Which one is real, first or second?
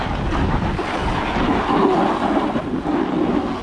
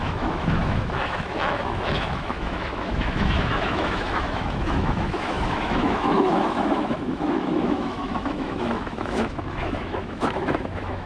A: first